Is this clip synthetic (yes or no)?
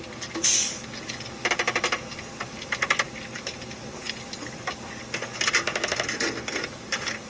no